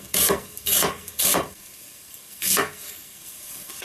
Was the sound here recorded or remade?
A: remade